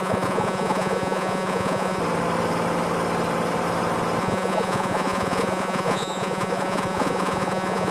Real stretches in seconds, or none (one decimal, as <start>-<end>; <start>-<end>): 2.0-4.2